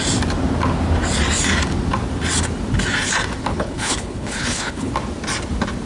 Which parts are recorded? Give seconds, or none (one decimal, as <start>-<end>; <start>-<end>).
0.0-3.5; 4.9-5.9